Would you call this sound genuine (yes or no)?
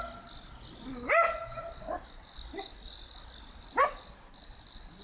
yes